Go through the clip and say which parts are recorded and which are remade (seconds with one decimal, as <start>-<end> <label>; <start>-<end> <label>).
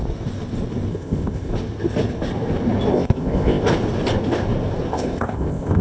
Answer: 0.0-0.9 recorded; 0.9-1.5 remade; 1.5-2.9 recorded; 2.9-3.6 remade; 3.6-4.9 recorded; 4.9-5.8 remade